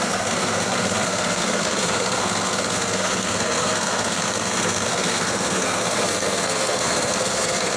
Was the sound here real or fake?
fake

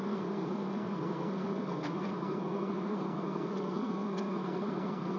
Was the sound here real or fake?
fake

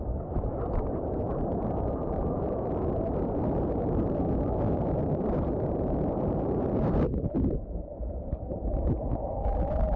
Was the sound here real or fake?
fake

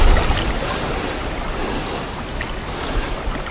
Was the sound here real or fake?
real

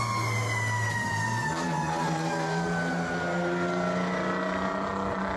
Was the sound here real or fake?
real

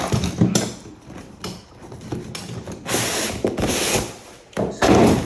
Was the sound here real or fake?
real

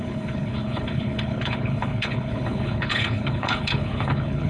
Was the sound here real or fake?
fake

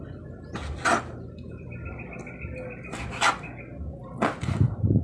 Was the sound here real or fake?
real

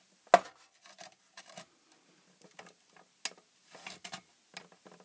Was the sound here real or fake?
real